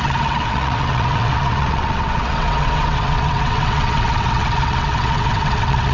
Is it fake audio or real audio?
fake